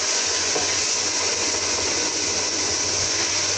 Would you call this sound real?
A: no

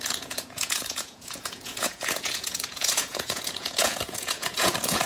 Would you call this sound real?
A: no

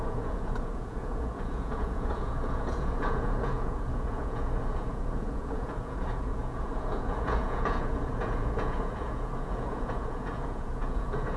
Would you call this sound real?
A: no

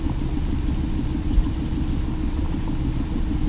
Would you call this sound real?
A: yes